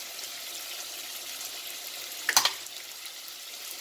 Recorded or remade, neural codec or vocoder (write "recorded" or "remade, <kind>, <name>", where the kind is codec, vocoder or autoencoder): recorded